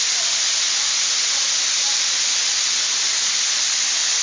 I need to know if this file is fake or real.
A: real